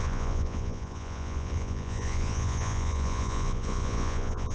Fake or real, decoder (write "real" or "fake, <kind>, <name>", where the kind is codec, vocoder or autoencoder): fake, vocoder, Vocos